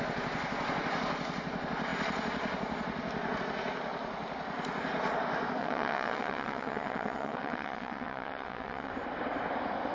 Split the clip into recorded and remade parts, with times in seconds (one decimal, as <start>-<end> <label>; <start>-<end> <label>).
0.0-5.6 recorded; 5.6-8.9 remade; 8.9-9.9 recorded